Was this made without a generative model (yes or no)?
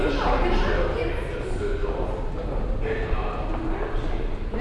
yes